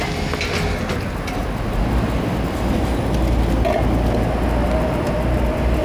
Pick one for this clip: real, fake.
real